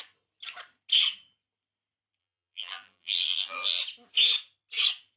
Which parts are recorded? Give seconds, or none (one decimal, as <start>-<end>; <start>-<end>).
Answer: 0.0-2.2; 3.8-5.2